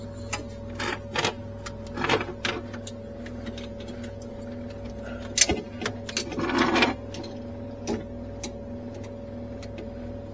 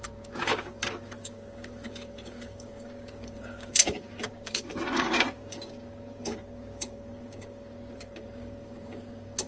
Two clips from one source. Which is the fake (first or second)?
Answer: second